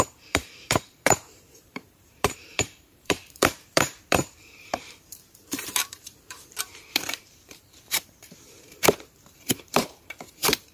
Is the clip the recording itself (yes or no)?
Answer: no